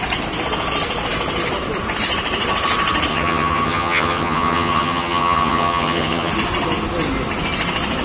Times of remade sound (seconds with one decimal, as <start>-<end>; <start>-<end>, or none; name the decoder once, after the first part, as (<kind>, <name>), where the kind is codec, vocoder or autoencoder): 3.1-6.3 (vocoder, HiFi-GAN)